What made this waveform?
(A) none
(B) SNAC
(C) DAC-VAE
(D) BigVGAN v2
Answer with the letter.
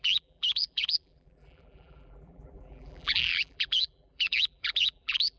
D